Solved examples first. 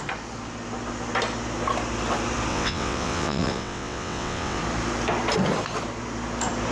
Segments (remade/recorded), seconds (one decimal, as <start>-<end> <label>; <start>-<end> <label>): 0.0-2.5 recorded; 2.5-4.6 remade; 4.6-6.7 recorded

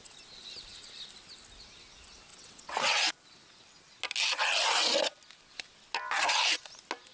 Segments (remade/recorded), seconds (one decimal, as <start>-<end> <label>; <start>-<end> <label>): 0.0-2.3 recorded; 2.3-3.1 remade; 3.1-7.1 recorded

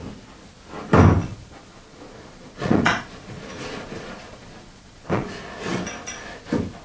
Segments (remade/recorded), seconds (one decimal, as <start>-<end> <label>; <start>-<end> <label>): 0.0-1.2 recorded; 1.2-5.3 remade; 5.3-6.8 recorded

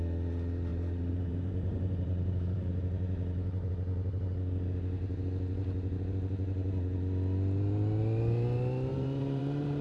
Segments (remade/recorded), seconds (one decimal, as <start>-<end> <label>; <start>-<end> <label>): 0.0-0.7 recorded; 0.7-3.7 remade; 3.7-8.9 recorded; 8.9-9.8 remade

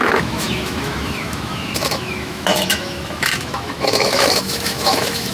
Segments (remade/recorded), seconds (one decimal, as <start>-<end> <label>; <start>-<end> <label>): 0.0-5.3 remade

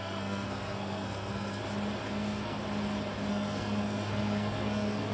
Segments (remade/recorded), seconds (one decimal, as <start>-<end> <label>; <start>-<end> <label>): 0.0-1.6 remade; 1.6-2.1 recorded; 2.1-2.6 remade; 2.6-3.3 recorded; 3.3-5.1 remade

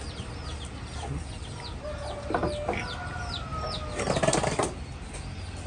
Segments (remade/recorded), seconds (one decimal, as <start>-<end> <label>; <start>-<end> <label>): 0.0-5.7 recorded